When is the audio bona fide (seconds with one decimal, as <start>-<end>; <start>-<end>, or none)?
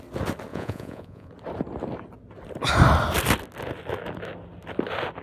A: 0.0-0.5; 1.3-5.2